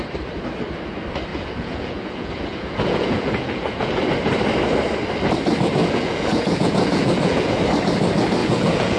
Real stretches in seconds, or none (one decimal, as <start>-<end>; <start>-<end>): 0.0-1.3; 4.0-5.8; 7.6-8.4